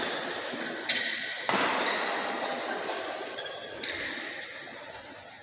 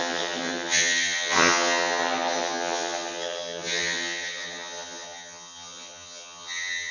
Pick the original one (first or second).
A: first